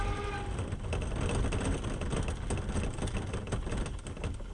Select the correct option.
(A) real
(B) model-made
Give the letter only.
A